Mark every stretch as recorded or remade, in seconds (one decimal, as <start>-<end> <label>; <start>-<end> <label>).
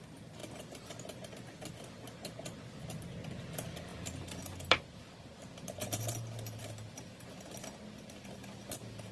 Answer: 0.0-9.1 recorded